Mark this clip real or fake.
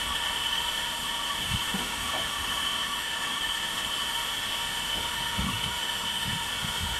fake